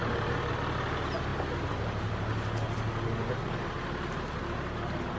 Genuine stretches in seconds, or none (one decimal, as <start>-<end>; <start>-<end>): 0.0-5.2